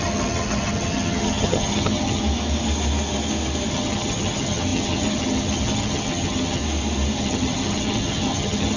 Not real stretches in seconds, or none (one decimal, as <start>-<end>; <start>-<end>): 0.0-2.2; 3.7-6.6; 7.2-8.8